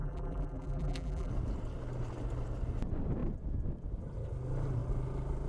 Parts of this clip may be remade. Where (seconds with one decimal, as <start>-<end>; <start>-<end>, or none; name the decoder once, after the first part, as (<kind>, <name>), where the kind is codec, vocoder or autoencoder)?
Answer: 0.0-1.3 (vocoder, BigVGAN v2)